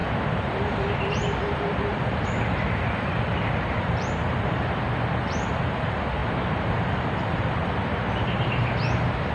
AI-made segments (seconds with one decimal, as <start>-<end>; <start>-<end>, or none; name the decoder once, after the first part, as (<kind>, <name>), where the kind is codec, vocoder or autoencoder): 0.0-4.8 (vocoder, BigVGAN v2); 6.2-8.8